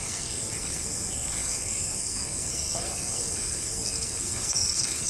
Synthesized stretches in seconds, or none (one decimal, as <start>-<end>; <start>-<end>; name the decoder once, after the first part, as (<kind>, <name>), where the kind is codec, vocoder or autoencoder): 0.0-5.1 (codec, SNAC)